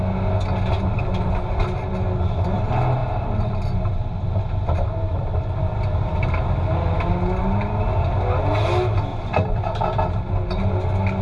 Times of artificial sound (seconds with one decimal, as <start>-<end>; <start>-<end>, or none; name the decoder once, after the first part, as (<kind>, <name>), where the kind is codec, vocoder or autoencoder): 3.0-5.6 (vocoder, BigVGAN v2); 9.1-10.1